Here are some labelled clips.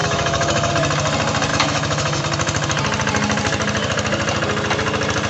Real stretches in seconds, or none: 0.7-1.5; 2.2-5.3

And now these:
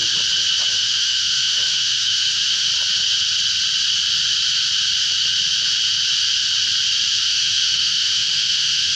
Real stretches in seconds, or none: 0.0-0.7; 2.7-7.1